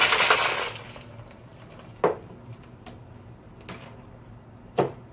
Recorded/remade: recorded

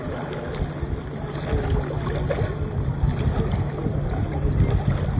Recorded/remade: recorded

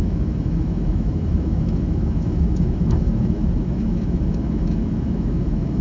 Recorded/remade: remade